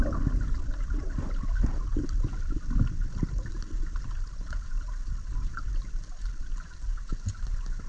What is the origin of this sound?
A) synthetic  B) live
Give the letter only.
B